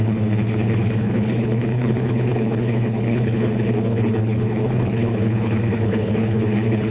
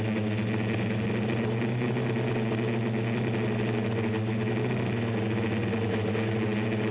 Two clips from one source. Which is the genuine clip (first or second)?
second